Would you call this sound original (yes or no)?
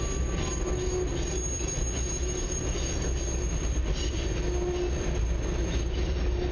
yes